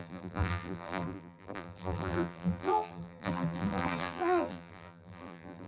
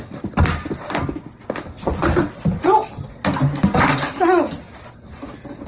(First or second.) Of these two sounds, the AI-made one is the first